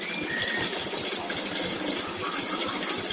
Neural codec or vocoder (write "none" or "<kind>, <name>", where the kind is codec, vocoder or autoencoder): none